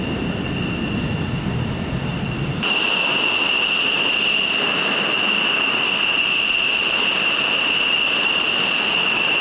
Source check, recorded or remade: recorded